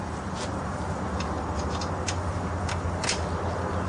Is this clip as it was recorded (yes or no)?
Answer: yes